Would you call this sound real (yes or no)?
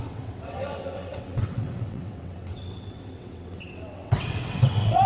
no